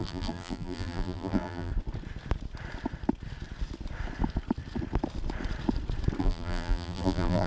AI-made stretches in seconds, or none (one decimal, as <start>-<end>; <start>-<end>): 0.0-1.7; 6.2-7.5